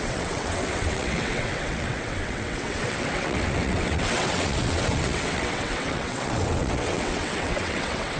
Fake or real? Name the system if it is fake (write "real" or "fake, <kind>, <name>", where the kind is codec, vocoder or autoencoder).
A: fake, vocoder, WaveNeXt